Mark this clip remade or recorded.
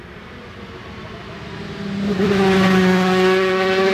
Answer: recorded